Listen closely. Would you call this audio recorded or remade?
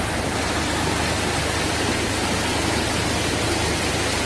recorded